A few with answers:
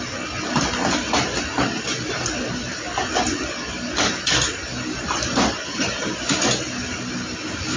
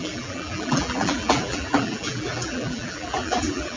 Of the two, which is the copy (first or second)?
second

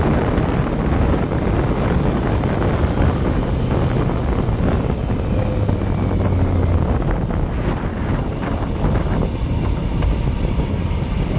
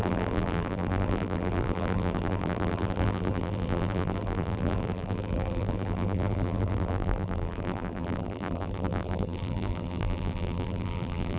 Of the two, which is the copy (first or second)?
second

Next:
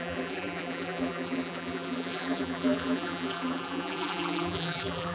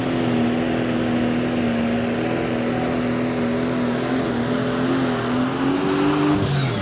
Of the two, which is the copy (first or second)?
first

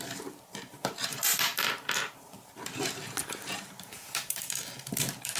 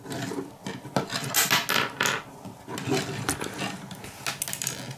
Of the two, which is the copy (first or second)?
first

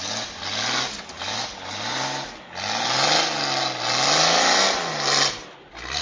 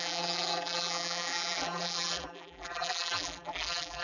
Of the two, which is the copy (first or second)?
second